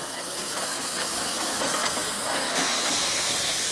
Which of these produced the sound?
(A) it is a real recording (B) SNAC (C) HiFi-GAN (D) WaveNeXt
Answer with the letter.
B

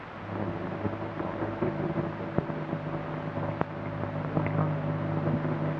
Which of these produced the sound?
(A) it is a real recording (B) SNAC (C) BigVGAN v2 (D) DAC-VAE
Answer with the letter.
A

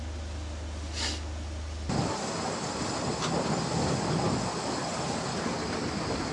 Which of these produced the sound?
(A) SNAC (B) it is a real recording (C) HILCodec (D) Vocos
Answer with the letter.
B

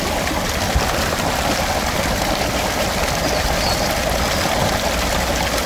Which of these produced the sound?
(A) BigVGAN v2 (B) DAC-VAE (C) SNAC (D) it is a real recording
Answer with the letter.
D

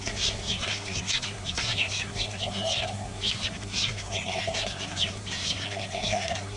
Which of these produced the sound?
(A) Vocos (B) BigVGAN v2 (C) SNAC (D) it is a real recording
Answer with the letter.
C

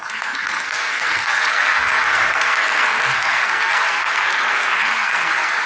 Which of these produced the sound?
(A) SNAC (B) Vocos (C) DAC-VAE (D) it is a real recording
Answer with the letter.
A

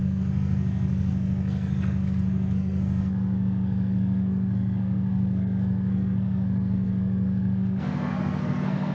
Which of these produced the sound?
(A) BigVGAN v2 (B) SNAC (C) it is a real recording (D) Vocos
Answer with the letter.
B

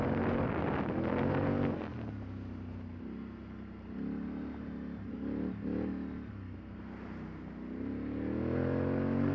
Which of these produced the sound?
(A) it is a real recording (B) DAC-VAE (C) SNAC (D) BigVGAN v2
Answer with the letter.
A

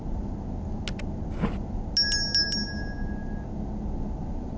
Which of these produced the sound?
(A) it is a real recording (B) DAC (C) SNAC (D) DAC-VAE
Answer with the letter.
A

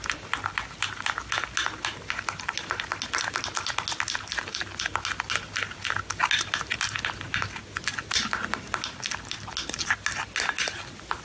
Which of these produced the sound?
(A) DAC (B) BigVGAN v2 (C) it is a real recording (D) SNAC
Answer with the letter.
C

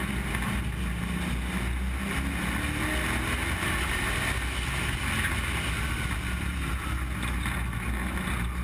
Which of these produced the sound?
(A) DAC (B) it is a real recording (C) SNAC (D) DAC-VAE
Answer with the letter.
B